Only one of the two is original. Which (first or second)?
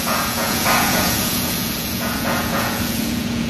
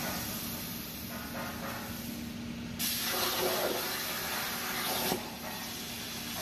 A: second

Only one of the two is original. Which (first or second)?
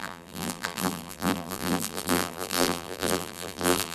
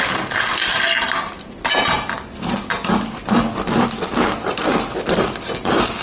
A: second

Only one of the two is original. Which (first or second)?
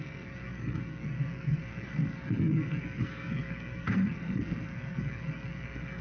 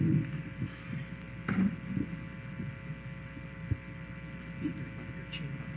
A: second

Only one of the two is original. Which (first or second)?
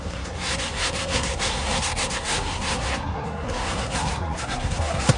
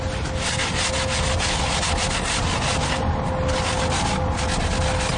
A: second